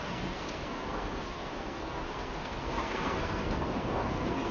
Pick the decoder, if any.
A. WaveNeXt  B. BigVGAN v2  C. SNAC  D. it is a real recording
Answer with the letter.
C